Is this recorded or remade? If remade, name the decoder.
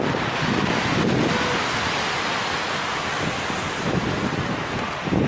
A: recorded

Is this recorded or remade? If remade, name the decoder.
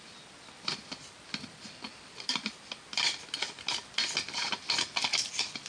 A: recorded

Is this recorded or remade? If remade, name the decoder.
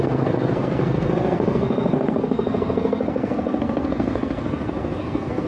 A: remade, codec, SNAC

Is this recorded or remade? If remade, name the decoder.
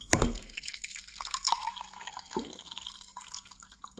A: remade, codec, SNAC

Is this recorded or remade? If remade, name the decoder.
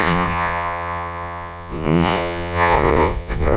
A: remade, vocoder, Vocos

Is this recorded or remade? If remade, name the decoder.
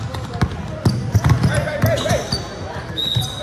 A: recorded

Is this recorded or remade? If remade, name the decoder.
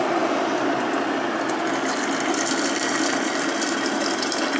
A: recorded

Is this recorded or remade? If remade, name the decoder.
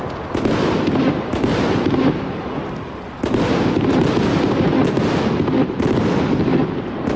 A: recorded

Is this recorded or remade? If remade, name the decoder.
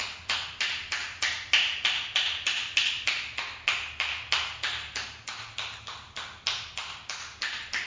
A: recorded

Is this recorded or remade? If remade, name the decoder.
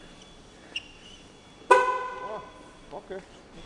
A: recorded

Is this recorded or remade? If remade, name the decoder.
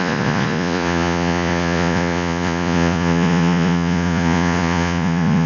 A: remade, vocoder, Vocos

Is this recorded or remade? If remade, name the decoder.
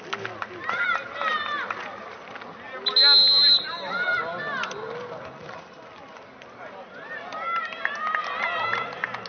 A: recorded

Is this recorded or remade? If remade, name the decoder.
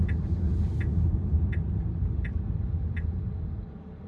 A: recorded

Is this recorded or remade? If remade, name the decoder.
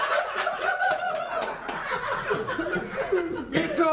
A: remade, vocoder, Vocos